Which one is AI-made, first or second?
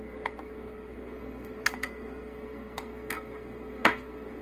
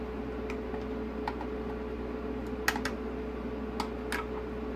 first